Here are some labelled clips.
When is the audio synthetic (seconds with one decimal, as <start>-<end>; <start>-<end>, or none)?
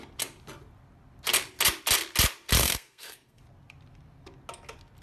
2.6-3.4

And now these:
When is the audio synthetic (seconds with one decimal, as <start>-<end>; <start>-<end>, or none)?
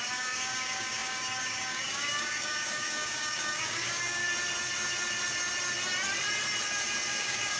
0.0-4.2; 7.1-7.6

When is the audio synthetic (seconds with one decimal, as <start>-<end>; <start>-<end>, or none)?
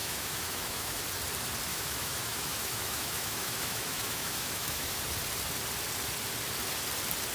0.0-1.0; 1.7-5.0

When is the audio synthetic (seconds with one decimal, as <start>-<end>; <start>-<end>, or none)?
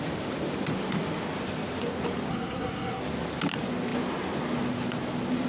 2.3-3.0